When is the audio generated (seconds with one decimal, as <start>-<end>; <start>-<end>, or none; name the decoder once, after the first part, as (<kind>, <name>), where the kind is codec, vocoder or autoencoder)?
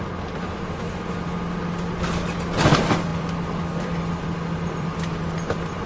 3.1-5.9 (vocoder, BigVGAN v2)